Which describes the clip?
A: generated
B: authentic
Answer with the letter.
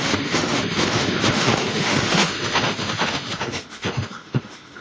A